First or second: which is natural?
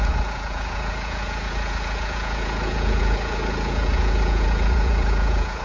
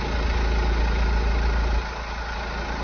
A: second